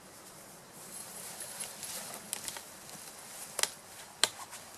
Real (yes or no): yes